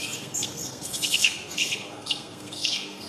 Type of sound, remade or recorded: remade